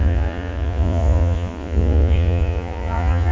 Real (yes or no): no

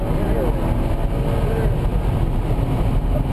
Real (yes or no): yes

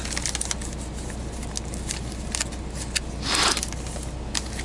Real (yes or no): yes